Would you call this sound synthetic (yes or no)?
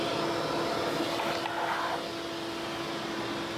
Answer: no